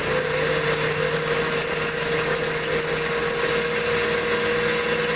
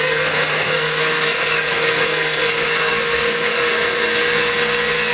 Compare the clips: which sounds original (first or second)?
first